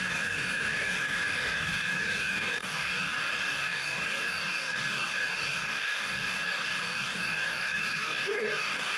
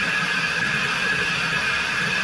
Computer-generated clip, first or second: first